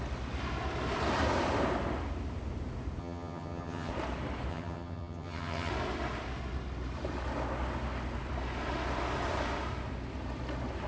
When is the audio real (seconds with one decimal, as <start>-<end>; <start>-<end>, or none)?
0.0-3.0; 3.9-4.5; 5.7-10.9